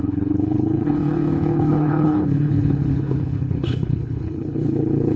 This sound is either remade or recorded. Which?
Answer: remade